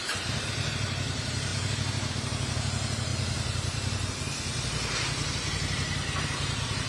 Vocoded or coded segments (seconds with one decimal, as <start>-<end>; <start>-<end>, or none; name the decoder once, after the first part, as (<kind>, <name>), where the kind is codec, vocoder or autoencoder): 0.0-3.1 (vocoder, BigVGAN v2); 6.2-6.9